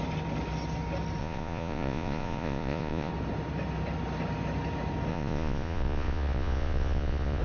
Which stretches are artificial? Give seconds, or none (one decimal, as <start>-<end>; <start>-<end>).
1.2-3.1; 5.1-7.4